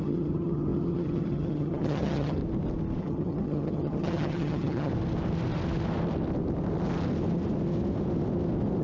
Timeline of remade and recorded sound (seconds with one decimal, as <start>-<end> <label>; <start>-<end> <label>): 0.0-2.4 remade; 2.4-3.0 recorded; 3.0-4.9 remade; 4.9-8.8 recorded